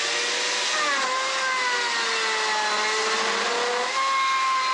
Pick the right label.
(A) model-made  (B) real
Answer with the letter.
B